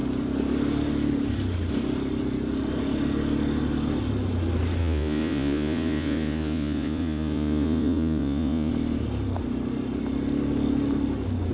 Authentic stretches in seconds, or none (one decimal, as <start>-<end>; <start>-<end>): 0.0-4.8; 8.7-11.5